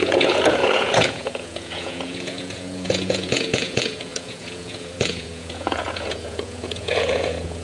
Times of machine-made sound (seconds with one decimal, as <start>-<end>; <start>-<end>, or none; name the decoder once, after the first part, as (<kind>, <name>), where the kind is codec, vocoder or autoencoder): 0.0-7.6 (vocoder, Vocos)